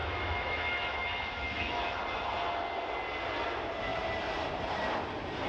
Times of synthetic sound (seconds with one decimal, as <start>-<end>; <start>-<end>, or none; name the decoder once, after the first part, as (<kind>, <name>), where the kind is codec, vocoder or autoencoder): 0.0-2.0 (autoencoder, DAC-VAE)